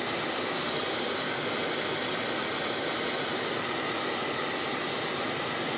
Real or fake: real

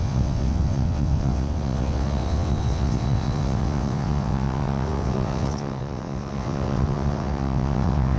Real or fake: fake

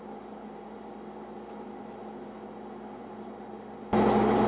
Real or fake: real